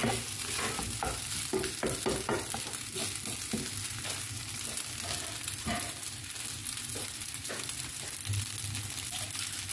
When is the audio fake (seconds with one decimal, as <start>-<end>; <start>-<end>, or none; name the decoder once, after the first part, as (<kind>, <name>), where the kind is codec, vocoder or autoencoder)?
6.6-7.9 (vocoder, BigVGAN v2)